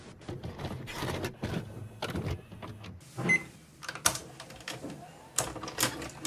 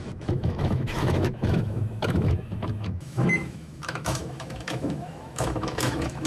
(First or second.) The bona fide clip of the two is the first